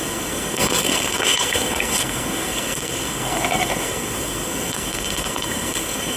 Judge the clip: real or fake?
fake